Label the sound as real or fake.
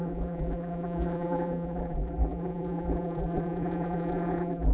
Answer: fake